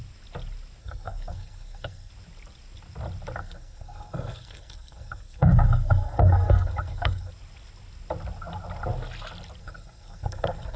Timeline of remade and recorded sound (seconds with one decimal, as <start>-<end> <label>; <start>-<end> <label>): 0.0-0.8 recorded; 0.8-2.1 remade; 2.1-3.4 recorded; 3.4-7.3 remade; 7.3-9.6 recorded; 9.6-10.8 remade